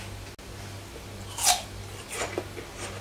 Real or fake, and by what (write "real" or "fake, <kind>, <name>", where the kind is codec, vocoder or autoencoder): real